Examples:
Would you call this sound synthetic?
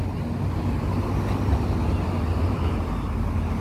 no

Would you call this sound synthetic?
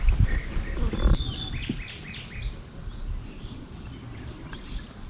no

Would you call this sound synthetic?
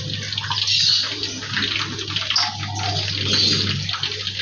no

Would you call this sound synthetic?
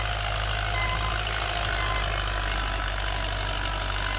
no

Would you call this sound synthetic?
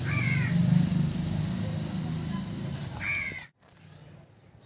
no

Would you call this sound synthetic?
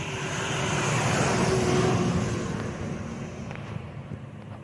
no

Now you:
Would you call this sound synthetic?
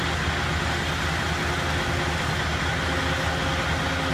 no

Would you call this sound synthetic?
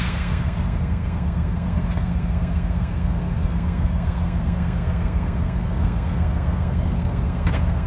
yes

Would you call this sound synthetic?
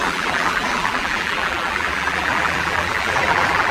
yes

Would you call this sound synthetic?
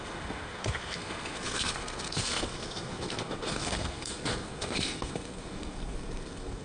yes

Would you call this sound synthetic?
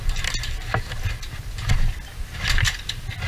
no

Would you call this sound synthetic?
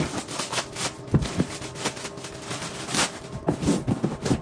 no